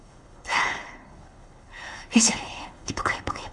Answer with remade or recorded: remade